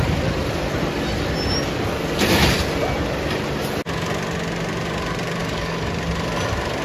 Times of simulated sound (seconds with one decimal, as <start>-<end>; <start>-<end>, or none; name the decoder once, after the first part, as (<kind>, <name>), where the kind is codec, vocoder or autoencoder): 5.4-5.9 (codec, DAC)